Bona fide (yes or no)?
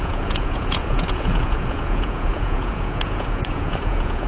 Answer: no